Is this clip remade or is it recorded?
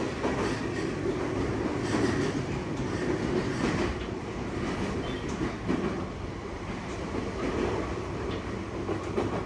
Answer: recorded